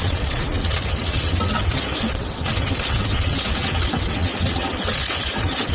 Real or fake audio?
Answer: fake